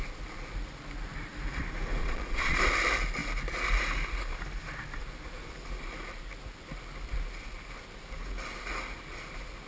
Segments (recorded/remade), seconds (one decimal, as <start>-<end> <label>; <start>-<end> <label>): 0.0-2.0 recorded; 2.0-2.6 remade; 2.6-9.7 recorded